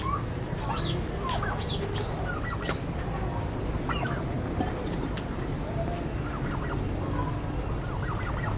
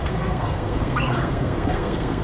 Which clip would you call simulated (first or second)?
second